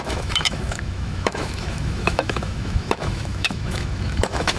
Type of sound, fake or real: fake